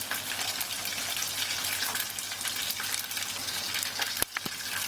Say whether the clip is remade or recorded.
recorded